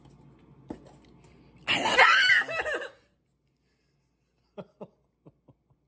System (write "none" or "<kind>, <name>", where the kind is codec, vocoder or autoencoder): none